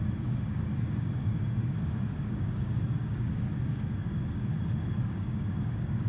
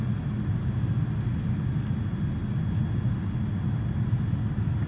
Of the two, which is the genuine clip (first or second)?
second